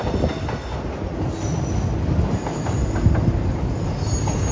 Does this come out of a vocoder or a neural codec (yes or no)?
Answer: no